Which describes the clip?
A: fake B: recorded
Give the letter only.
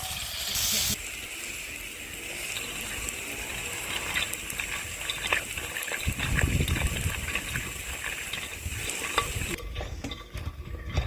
B